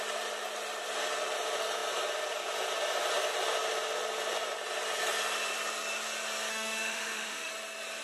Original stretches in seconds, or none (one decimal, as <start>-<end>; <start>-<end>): 0.0-6.5; 7.5-8.0